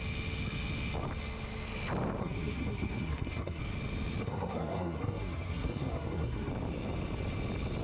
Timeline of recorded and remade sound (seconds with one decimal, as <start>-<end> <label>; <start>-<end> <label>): 0.0-2.2 recorded; 2.2-3.6 remade; 3.6-4.2 recorded; 4.2-6.5 remade; 6.5-7.8 recorded